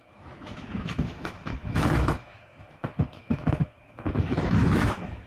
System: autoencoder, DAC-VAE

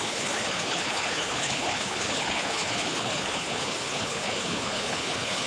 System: codec, HILCodec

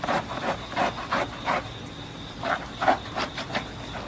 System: none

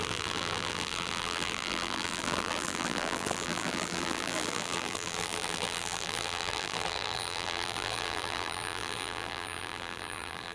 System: vocoder, BigVGAN v2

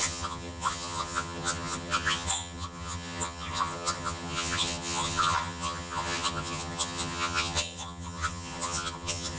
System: vocoder, HiFi-GAN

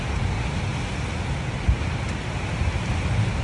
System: none